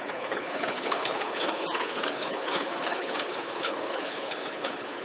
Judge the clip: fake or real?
fake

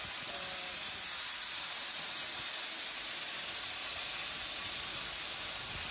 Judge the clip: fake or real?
real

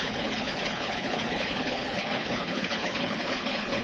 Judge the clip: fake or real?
fake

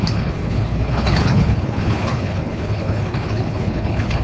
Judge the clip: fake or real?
fake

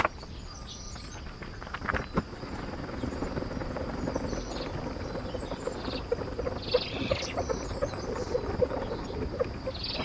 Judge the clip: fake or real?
real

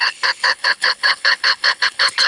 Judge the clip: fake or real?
fake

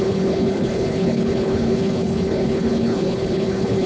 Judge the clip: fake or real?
fake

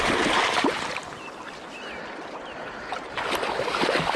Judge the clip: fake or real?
real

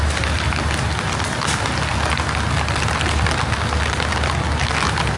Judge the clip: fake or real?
real